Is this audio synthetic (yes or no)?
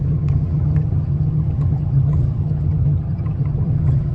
yes